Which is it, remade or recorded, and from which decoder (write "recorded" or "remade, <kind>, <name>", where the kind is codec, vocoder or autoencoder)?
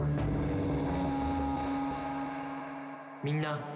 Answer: recorded